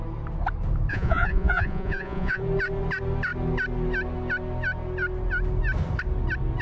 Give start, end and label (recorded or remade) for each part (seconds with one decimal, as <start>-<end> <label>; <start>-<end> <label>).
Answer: 0.0-0.9 recorded; 0.9-2.4 remade; 2.4-6.6 recorded